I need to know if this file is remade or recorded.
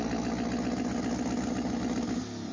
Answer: recorded